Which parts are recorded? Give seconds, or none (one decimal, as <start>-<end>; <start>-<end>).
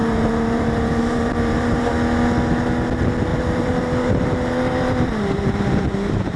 1.8-3.3